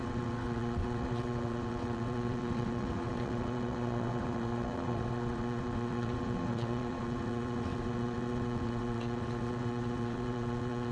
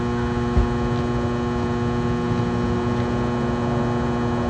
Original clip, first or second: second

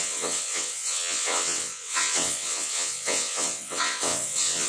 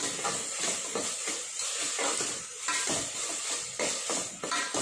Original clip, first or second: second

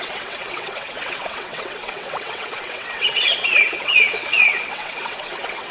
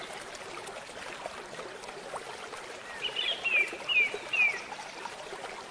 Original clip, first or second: second